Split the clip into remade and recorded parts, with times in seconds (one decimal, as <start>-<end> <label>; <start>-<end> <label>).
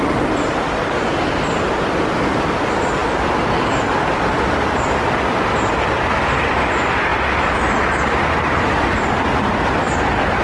0.0-10.4 recorded